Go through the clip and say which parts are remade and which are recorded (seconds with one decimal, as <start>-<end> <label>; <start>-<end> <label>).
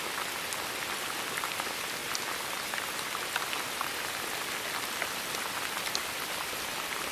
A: 0.0-7.1 recorded